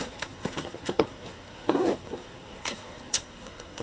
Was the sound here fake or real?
fake